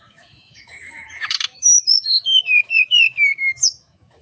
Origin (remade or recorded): remade